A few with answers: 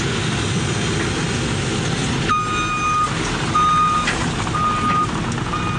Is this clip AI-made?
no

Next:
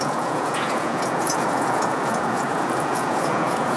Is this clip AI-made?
yes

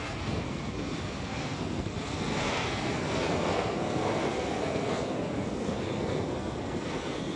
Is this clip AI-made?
yes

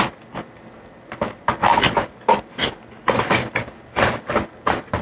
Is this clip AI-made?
no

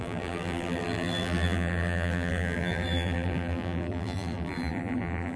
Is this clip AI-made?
yes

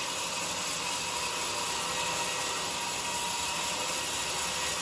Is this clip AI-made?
no